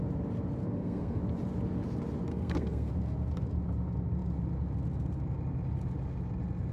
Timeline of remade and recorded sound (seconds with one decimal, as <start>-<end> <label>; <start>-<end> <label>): 0.0-0.6 recorded; 0.6-1.2 remade; 1.2-2.3 recorded; 2.3-2.9 remade; 2.9-6.7 recorded